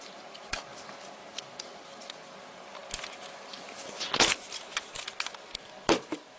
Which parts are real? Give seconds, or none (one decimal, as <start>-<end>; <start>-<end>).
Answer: 0.7-1.6; 2.8-6.4